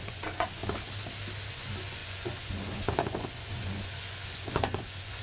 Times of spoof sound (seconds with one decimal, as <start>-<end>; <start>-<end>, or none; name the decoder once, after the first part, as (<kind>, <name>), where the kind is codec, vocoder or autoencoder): 0.0-0.6 (vocoder, Vocos); 1.5-5.2